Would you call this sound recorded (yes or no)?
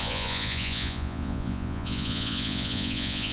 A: no